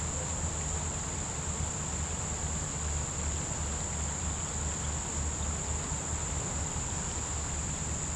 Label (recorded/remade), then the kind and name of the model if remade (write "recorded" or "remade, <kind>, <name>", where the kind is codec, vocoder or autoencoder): recorded